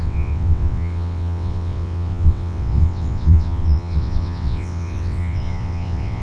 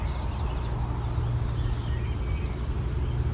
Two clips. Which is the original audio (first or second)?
second